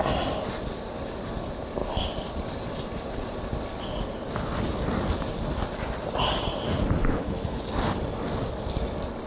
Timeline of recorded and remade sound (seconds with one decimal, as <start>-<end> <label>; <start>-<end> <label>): 0.0-7.0 recorded; 7.0-7.7 remade; 7.7-9.3 recorded